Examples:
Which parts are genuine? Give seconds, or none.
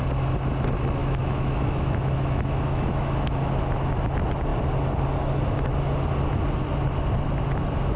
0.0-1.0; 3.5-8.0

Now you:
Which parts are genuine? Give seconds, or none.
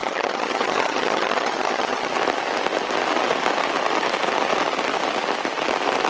2.1-6.1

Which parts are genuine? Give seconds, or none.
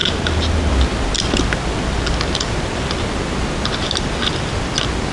0.0-5.1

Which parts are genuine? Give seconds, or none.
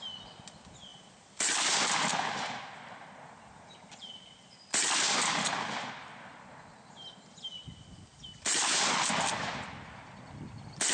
0.0-0.9; 4.6-8.1; 9.1-10.9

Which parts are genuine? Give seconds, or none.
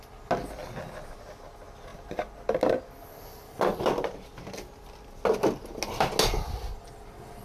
0.0-7.4